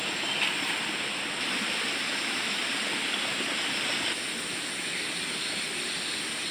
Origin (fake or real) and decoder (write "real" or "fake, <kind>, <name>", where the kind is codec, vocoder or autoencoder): real